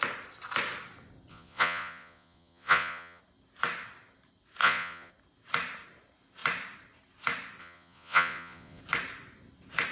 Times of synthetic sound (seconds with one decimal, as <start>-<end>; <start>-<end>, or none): 1.3-3.2; 4.6-5.1; 7.6-8.8